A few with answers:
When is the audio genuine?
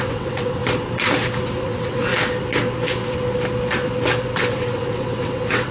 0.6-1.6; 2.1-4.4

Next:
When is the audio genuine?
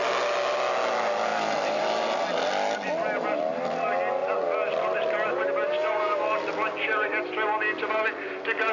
0.0-8.7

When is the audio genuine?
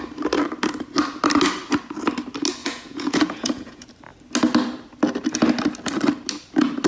0.0-2.6; 3.9-6.9